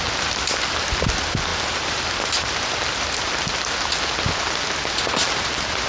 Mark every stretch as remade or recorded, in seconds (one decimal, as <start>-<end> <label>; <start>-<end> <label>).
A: 0.0-5.9 recorded

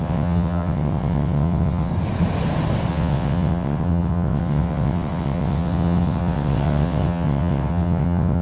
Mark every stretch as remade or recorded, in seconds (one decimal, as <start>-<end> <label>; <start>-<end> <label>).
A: 0.0-1.9 remade; 1.9-2.9 recorded; 2.9-8.4 remade